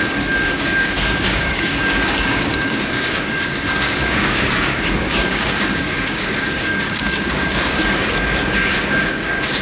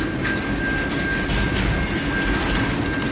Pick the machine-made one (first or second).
first